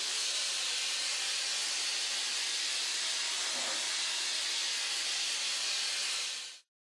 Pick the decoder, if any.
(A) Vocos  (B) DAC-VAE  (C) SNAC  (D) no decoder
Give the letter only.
D